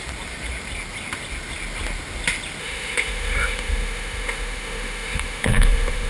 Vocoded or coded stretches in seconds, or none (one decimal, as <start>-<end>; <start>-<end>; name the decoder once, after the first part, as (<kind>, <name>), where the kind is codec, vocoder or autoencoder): 2.6-6.1 (autoencoder, DAC-VAE)